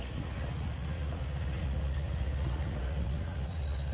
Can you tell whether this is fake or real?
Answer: fake